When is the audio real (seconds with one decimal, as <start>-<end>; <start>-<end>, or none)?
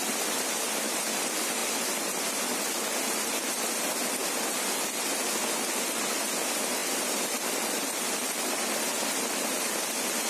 0.0-1.6; 2.6-6.8; 9.8-10.3